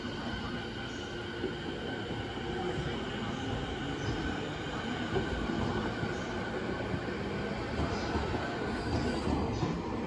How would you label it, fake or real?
real